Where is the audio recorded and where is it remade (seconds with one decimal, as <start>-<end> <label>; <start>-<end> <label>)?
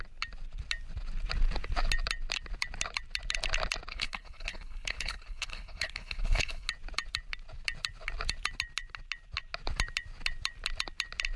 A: 0.0-3.9 recorded; 3.9-6.7 remade; 6.7-11.4 recorded